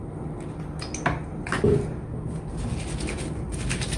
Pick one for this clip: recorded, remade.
recorded